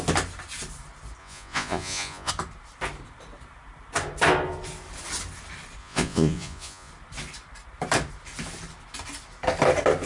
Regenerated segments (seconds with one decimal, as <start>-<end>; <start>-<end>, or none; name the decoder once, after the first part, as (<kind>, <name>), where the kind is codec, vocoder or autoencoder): 1.2-2.3 (vocoder, Vocos); 5.8-6.9